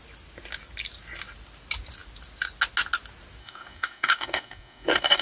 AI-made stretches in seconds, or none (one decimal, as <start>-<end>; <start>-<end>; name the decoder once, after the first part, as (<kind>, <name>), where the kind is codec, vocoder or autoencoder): 3.4-5.2 (codec, DAC)